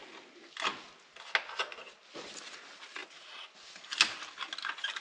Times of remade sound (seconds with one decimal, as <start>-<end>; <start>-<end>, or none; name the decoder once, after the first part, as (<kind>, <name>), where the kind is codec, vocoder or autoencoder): none